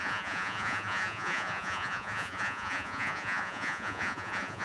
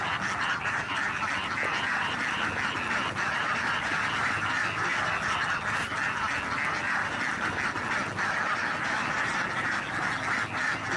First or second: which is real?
second